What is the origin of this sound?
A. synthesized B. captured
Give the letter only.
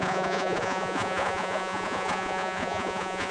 A